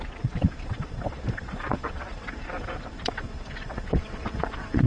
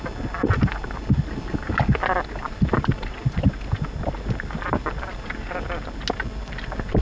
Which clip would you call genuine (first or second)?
second